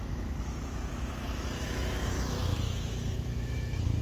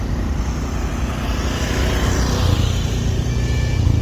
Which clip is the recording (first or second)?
second